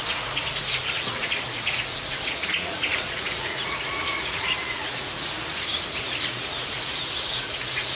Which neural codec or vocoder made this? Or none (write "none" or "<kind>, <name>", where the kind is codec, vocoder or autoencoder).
vocoder, Vocos